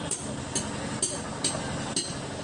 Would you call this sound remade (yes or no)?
no